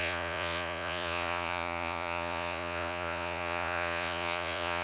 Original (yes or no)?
no